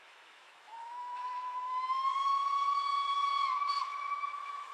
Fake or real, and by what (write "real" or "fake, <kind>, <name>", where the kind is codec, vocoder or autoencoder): fake, autoencoder, DAC-VAE